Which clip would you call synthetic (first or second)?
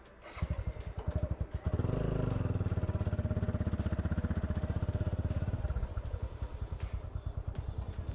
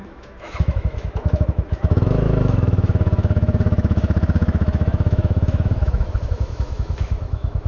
second